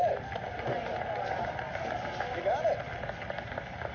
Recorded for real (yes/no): yes